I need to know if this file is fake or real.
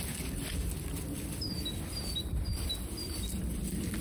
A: real